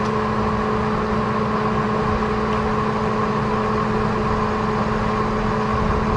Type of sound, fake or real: real